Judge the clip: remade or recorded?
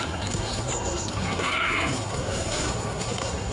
remade